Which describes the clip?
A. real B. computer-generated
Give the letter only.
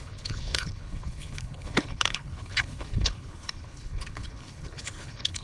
B